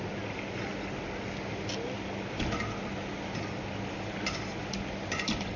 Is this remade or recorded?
recorded